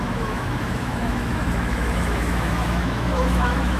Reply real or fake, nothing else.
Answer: fake